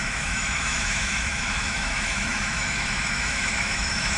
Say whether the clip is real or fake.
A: fake